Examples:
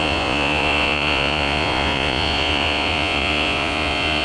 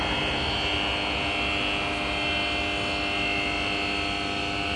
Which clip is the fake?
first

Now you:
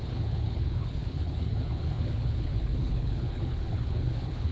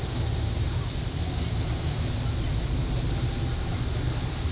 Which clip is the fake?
first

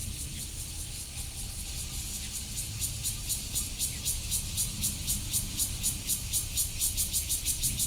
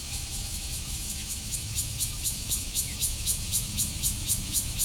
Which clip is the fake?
second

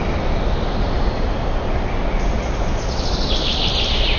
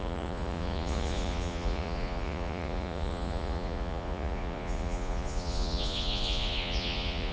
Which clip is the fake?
second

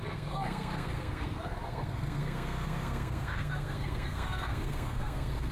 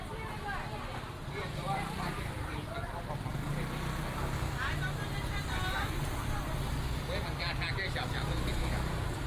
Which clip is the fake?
first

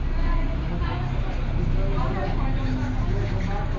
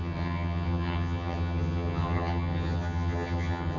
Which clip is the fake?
second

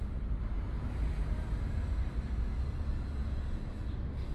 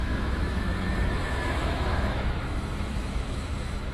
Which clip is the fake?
second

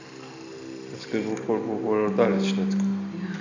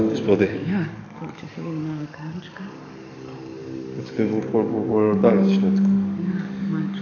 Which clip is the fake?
second